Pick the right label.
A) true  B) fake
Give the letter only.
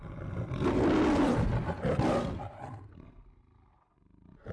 A